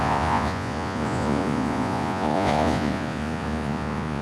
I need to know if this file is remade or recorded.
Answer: remade